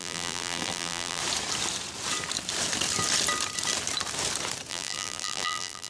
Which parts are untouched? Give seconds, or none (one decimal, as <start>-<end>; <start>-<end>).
1.2-4.7